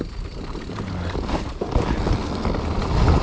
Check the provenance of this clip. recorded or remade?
recorded